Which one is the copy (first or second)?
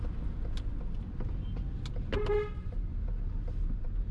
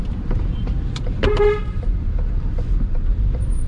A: second